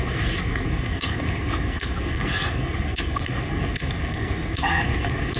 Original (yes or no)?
no